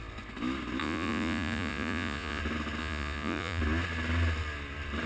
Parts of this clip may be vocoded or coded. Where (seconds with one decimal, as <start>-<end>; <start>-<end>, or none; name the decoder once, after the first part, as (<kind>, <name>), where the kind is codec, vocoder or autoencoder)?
0.8-2.4 (vocoder, Vocos); 2.8-3.6